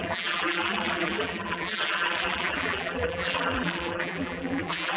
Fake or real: fake